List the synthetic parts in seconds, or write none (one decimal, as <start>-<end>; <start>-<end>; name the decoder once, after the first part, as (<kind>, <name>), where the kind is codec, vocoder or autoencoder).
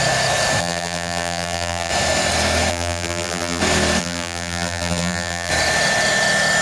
0.6-1.9 (vocoder, BigVGAN v2); 2.7-3.6; 4.0-5.5